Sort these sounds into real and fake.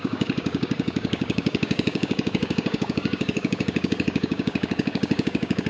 fake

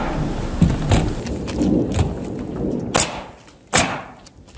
real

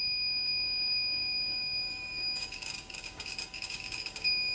fake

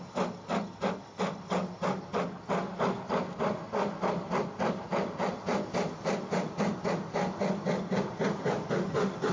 real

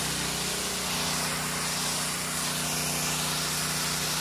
real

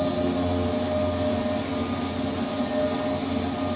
real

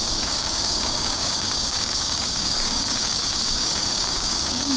fake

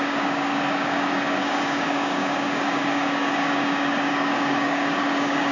fake